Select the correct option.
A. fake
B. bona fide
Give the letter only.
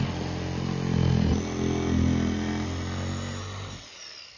B